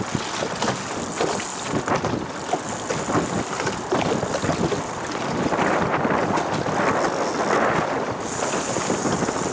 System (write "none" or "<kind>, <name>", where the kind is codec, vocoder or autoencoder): none